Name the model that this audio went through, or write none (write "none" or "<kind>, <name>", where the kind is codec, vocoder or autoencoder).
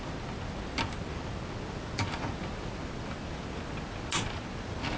none